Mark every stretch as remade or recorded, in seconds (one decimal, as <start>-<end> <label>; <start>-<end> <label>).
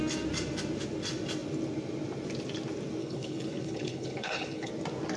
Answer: 0.0-3.0 recorded; 3.0-4.7 remade; 4.7-5.2 recorded